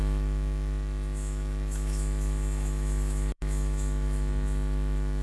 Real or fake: fake